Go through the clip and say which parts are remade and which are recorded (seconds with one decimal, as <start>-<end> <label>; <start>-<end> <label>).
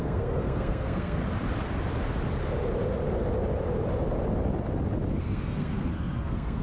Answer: 0.0-1.2 remade; 1.2-5.2 recorded; 5.2-6.6 remade